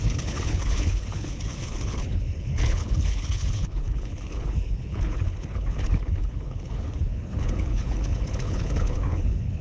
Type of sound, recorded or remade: remade